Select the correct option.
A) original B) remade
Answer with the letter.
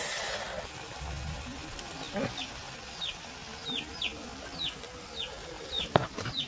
A